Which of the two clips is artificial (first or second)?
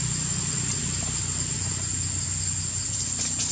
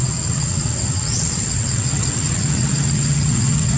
second